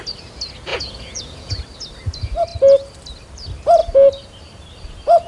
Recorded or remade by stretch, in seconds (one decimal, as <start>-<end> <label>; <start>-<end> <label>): 0.0-0.7 recorded; 0.7-1.6 remade; 1.6-5.3 recorded